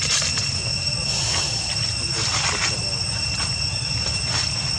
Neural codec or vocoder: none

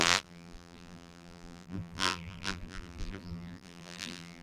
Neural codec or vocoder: vocoder, BigVGAN v2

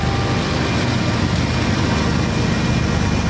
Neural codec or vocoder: none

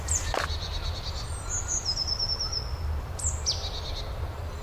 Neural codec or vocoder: vocoder, BigVGAN v2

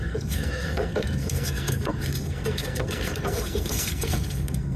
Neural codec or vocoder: codec, SNAC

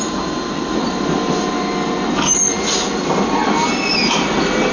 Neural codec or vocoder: none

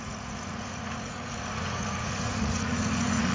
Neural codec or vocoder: vocoder, Vocos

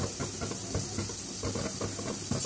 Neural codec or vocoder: none